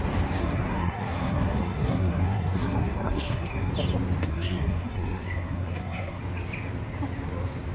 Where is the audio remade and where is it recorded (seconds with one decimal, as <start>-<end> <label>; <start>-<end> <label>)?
0.0-0.4 recorded; 0.4-3.7 remade; 3.7-4.2 recorded; 4.2-6.2 remade; 6.2-7.7 recorded